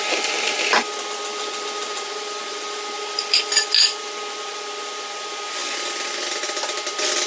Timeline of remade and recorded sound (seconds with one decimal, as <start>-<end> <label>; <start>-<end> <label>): 0.0-1.3 recorded; 1.3-3.4 remade; 3.4-7.3 recorded